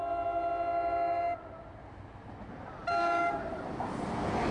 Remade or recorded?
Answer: recorded